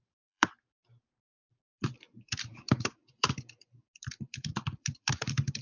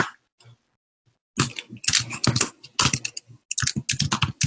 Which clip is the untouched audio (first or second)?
second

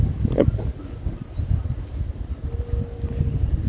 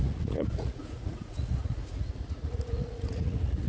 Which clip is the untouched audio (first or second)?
first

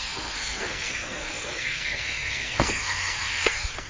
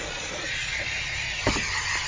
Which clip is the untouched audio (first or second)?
second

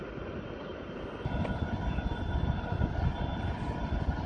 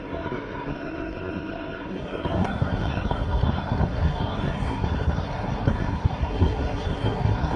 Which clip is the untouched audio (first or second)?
first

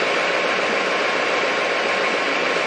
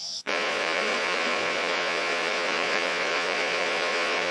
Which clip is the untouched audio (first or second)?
first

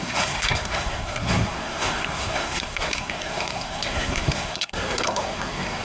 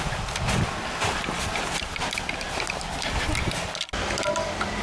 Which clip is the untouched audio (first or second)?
second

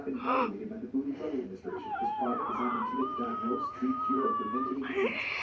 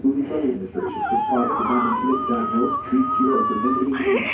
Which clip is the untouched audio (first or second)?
second